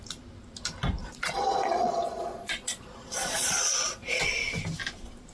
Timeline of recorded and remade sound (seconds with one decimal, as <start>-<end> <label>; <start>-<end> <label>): 0.0-1.0 recorded; 1.0-4.2 remade; 4.2-5.3 recorded